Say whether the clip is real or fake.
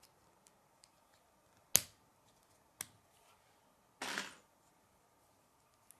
real